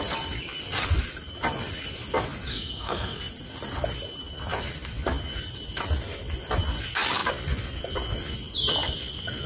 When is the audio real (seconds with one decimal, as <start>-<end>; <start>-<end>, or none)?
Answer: 0.0-2.5; 3.2-9.5

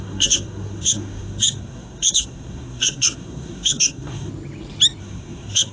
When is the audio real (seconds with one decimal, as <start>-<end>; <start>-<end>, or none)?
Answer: 4.3-5.0

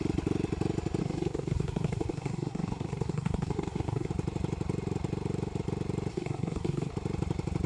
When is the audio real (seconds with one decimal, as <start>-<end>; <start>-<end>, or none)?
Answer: 0.0-1.0; 4.1-6.1; 6.9-7.7

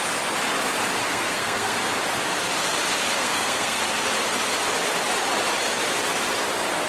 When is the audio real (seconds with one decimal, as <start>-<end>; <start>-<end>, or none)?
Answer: 0.0-1.0; 1.9-3.2; 3.8-6.9